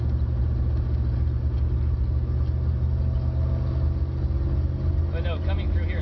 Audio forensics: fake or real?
real